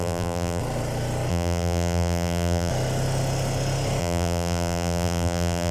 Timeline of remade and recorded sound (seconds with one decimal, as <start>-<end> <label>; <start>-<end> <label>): 0.0-0.6 remade; 0.6-1.3 recorded; 1.3-2.7 remade; 2.7-4.0 recorded; 4.0-5.7 remade